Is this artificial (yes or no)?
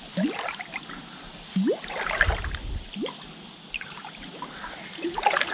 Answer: no